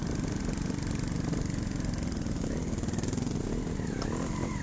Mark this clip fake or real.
real